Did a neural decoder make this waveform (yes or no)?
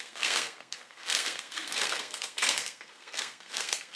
yes